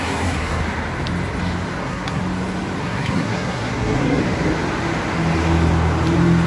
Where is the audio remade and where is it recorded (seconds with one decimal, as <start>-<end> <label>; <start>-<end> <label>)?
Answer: 0.0-0.6 remade; 0.6-1.8 recorded; 1.8-2.2 remade; 2.2-2.8 recorded; 2.8-4.2 remade; 4.2-6.5 recorded

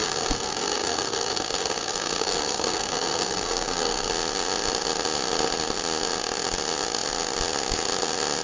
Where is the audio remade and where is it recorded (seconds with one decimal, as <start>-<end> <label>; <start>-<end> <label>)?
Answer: 0.0-4.1 remade; 4.1-8.4 recorded

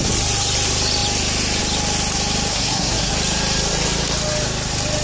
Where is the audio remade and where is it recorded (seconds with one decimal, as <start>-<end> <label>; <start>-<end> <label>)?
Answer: 0.0-2.5 recorded; 2.5-3.1 remade; 3.1-5.0 recorded

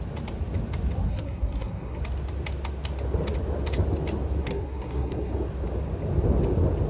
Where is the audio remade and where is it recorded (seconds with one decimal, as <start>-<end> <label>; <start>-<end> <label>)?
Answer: 0.0-1.1 recorded; 1.1-2.0 remade; 2.0-4.4 recorded; 4.4-5.3 remade; 5.3-6.9 recorded

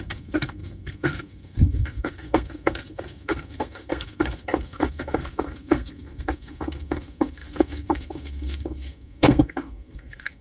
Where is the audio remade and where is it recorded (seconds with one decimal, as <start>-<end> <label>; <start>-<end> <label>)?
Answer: 0.0-10.4 remade

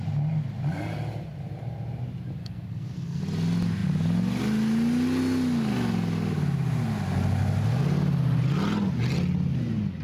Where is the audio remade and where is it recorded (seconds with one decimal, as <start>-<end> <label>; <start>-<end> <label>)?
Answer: 0.0-2.4 recorded; 2.4-3.2 remade; 3.2-10.0 recorded

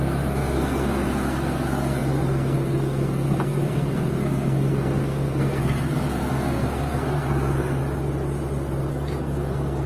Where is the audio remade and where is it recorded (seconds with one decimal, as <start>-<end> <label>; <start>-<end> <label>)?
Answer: 0.0-7.8 remade; 7.8-8.9 recorded; 8.9-9.9 remade